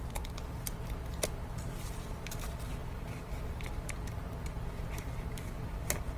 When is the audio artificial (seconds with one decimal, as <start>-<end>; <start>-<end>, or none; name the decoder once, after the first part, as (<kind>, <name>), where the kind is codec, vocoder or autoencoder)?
none